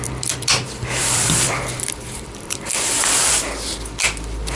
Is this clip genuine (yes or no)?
no